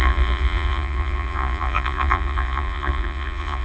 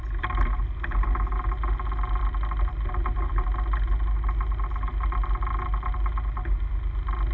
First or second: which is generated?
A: first